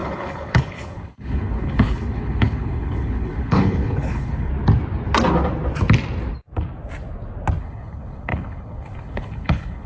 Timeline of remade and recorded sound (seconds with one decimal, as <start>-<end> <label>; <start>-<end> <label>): 0.0-4.5 remade; 4.5-7.6 recorded; 7.6-9.9 remade